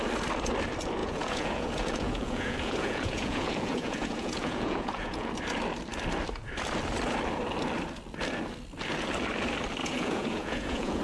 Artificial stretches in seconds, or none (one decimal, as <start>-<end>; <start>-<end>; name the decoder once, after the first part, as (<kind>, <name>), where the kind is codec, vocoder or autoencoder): 1.0-5.3 (vocoder, Vocos); 9.8-11.0